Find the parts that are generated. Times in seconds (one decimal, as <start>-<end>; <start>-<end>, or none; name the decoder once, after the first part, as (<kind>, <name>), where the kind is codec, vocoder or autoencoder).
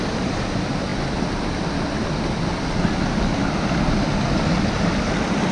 none